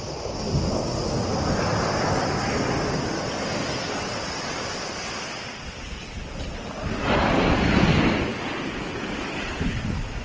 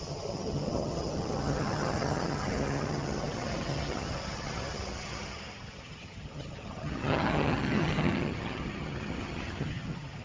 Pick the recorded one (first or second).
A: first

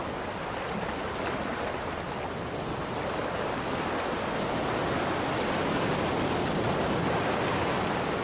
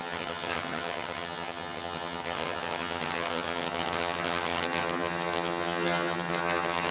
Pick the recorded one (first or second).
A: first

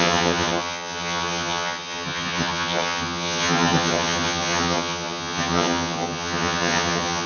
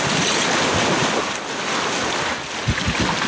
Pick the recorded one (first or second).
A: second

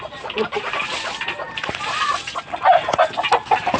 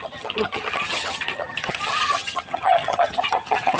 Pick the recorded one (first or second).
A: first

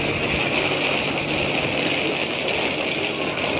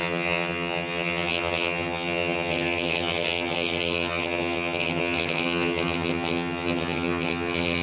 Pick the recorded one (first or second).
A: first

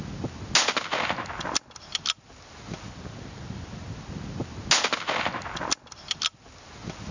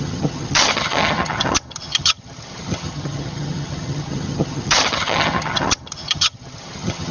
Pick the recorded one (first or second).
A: first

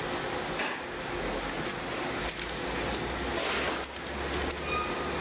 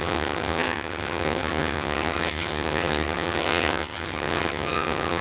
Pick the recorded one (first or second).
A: first